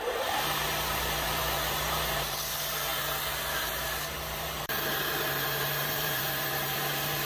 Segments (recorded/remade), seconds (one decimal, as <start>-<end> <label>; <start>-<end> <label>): 0.0-2.9 remade; 2.9-3.5 recorded; 3.5-7.3 remade